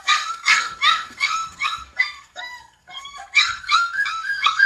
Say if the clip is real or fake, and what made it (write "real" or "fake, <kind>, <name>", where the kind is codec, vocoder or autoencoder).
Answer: fake, codec, SNAC